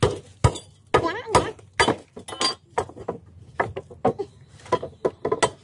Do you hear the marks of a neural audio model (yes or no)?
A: no